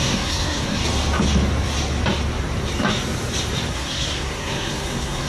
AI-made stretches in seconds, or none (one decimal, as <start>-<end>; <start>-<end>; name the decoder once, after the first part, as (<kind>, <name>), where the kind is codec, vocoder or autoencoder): 0.0-0.8 (codec, SNAC); 3.7-5.3

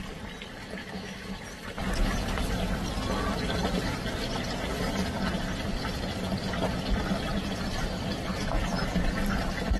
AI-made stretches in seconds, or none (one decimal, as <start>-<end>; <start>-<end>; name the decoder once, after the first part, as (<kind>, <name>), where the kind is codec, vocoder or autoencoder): 0.8-1.3 (autoencoder, DAC-VAE)

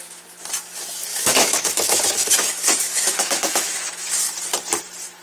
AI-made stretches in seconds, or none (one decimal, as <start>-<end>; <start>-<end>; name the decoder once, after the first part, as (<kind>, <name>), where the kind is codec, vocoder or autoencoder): 1.1-4.2 (autoencoder, DAC-VAE)

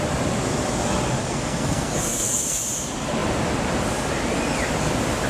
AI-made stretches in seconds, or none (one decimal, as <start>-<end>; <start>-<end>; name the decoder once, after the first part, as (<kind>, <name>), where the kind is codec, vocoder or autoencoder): 1.2-2.6 (codec, SNAC)

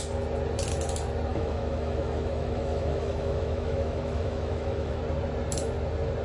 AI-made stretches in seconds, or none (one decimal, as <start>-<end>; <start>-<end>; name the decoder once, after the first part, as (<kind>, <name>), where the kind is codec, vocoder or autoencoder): 1.3-5.0 (autoencoder, DAC-VAE)

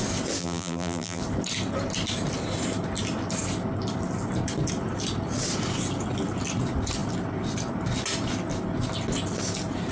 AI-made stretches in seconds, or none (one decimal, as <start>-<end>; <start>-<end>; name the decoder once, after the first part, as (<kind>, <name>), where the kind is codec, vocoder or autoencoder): 0.4-1.2 (vocoder, BigVGAN v2)